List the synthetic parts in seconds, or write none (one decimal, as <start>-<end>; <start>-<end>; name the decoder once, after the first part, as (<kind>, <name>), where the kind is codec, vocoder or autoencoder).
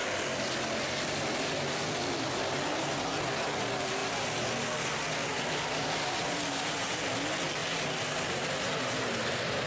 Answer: none